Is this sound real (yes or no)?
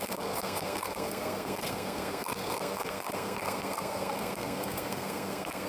no